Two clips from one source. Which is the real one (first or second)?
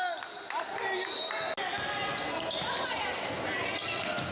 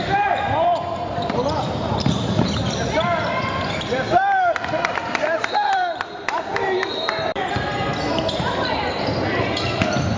first